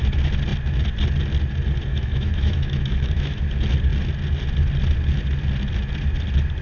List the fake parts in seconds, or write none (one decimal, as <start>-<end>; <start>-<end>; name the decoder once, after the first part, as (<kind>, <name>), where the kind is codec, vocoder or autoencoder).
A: 1.9-3.4 (autoencoder, DAC-VAE)